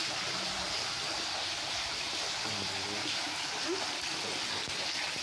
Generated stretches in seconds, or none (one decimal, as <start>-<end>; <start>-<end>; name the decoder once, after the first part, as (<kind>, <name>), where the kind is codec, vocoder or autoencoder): none